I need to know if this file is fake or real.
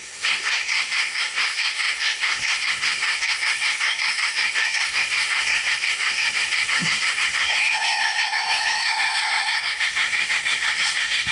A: fake